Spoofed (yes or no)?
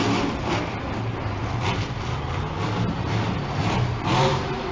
no